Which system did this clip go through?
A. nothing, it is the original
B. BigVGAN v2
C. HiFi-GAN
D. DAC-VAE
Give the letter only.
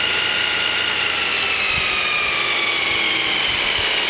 A